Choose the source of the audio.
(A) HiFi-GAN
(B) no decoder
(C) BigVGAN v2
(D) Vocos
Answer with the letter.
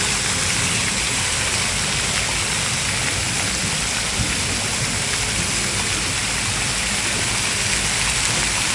B